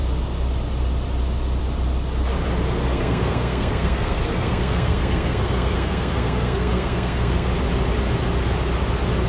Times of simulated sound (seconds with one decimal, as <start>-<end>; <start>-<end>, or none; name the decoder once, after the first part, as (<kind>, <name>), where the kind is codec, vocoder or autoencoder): 2.8-7.5 (codec, SNAC)

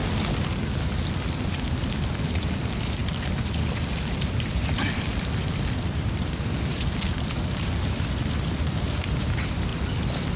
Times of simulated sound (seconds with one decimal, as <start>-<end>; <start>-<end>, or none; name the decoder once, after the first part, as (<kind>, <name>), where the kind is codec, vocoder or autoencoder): 2.3-10.4 (vocoder, BigVGAN v2)

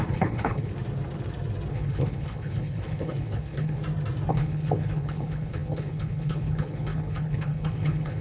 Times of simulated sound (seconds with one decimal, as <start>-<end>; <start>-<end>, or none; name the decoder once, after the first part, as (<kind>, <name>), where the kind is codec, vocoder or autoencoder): 0.0-0.7 (codec, HILCodec); 1.7-3.8; 4.3-8.2

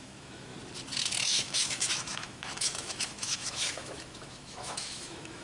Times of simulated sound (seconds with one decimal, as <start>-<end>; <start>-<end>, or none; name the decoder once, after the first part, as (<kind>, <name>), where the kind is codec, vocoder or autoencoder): 0.0-0.5 (autoencoder, DAC-VAE); 1.0-5.4